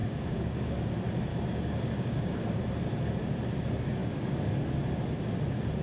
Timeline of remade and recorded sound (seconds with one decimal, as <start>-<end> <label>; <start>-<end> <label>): 0.0-0.9 remade; 0.9-1.3 recorded; 1.3-2.6 remade; 2.6-4.0 recorded; 4.0-4.5 remade; 4.5-5.8 recorded